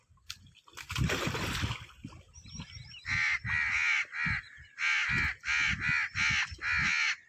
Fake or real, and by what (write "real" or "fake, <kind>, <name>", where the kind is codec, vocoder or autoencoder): real